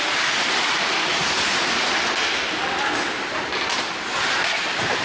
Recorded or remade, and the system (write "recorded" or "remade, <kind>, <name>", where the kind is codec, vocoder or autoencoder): recorded